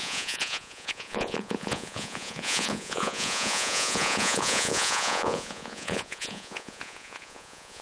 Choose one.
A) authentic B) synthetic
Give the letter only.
B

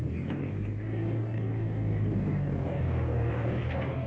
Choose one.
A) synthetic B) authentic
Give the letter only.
A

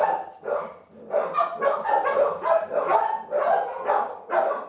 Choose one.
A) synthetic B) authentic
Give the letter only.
B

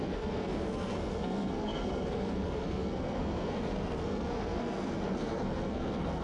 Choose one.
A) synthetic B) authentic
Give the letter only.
A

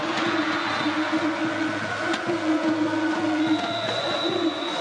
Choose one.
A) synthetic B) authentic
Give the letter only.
A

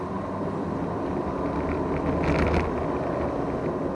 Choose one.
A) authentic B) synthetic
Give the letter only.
A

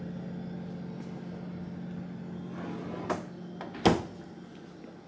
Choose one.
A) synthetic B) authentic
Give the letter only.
B